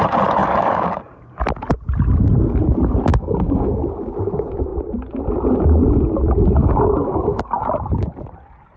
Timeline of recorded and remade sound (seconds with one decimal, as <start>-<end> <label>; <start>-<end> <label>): 0.0-0.4 recorded; 0.4-1.0 remade; 1.0-3.1 recorded; 3.1-3.7 remade; 3.7-6.6 recorded; 6.6-7.4 remade; 7.4-8.8 recorded

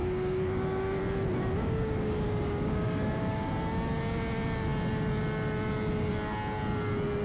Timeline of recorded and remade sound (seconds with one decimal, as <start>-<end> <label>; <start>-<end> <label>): 0.0-1.0 remade; 1.0-1.6 recorded; 1.6-3.5 remade; 3.5-7.2 recorded